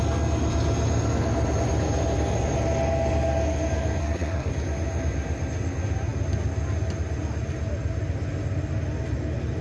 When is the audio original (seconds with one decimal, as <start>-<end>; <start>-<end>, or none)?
0.0-4.0; 4.5-9.6